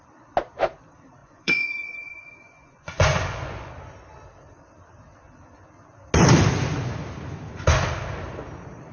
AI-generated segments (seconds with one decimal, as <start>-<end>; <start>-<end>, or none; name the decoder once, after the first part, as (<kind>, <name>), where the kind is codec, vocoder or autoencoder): 1.2-3.7 (vocoder, Vocos)